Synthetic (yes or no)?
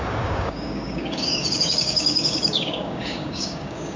yes